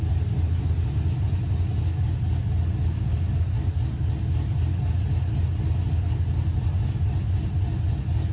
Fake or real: real